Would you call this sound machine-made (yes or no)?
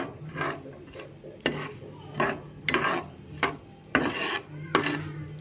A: no